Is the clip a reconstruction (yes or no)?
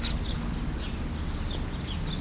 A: no